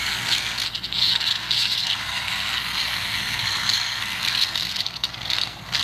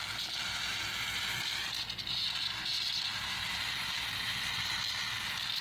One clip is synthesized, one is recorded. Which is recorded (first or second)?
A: second